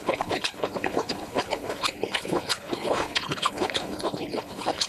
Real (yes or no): no